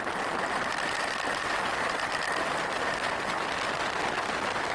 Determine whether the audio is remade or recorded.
recorded